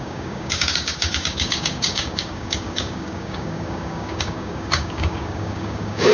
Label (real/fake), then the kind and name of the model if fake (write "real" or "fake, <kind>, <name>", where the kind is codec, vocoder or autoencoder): fake, codec, DAC